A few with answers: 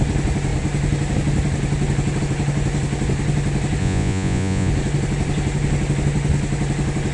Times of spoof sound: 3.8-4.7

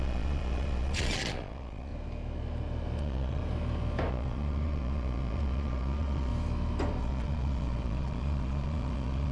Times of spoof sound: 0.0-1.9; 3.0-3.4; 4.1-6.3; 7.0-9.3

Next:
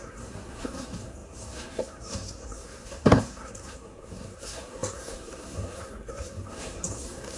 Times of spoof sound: 0.0-7.4

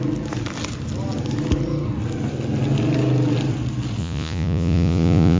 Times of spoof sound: 4.0-5.4